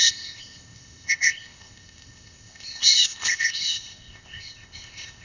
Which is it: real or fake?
fake